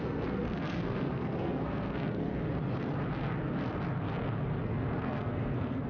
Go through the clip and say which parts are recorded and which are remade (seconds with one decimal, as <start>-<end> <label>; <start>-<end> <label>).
0.0-2.3 remade; 2.3-4.6 recorded; 4.6-5.9 remade